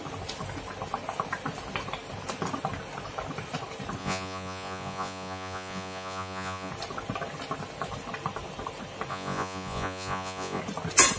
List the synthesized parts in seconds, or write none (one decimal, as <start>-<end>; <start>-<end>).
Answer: 4.0-6.7; 9.1-10.6